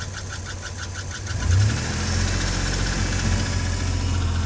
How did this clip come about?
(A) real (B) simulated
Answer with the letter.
A